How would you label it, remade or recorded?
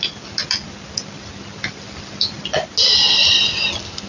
recorded